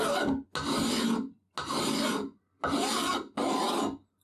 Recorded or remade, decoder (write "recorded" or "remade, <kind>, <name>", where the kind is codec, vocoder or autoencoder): recorded